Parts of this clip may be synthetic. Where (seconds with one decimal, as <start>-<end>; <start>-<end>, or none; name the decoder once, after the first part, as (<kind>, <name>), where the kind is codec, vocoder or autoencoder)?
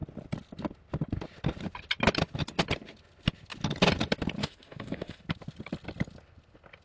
4.4-5.2 (autoencoder, DAC-VAE)